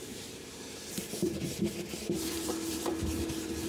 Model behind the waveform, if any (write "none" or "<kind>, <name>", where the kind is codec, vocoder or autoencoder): vocoder, BigVGAN v2